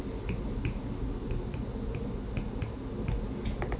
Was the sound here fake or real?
real